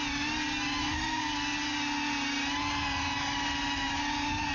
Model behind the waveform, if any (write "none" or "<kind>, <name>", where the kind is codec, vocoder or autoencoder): none